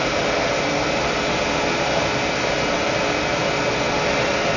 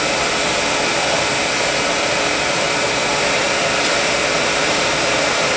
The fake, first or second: second